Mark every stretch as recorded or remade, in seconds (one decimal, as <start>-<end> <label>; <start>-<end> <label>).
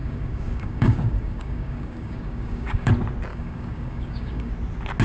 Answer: 0.0-2.9 remade; 2.9-3.3 recorded; 3.3-4.5 remade; 4.5-5.0 recorded